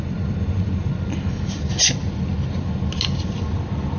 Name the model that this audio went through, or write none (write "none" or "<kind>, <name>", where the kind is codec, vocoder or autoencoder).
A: none